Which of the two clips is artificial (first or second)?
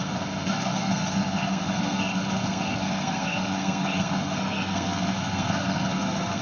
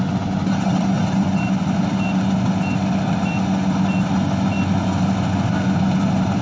first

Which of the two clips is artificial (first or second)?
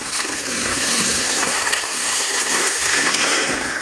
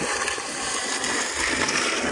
first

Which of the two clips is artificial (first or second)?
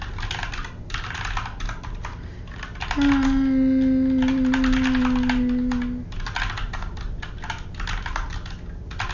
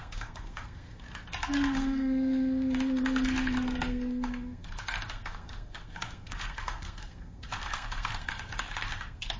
second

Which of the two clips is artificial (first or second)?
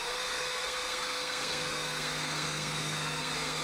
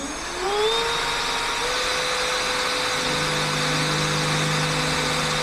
first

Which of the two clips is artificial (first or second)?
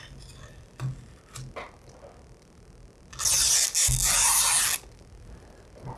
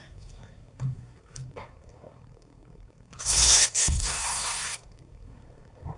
second